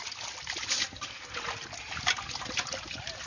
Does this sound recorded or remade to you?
recorded